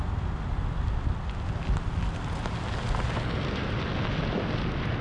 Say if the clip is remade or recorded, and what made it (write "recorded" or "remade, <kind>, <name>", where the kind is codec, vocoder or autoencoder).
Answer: recorded